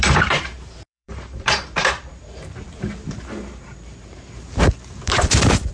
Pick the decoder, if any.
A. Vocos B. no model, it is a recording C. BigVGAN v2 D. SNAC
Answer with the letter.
C